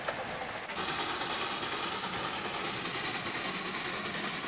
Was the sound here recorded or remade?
recorded